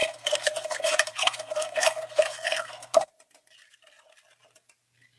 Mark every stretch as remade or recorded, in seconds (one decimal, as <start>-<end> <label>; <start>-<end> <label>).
0.0-3.1 remade; 3.1-5.2 recorded